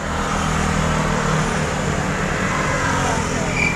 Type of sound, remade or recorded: recorded